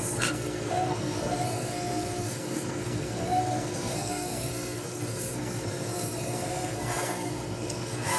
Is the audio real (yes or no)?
no